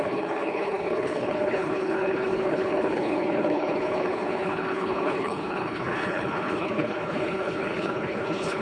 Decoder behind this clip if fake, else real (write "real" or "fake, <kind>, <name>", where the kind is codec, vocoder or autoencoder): fake, codec, HILCodec